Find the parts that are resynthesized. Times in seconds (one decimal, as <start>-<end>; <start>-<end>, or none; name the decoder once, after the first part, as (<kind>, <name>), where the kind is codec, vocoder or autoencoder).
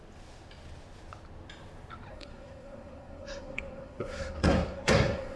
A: 2.1-5.4 (codec, SNAC)